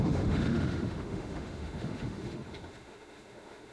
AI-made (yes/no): yes